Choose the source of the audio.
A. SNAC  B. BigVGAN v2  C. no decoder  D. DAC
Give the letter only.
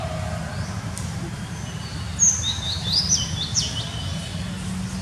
C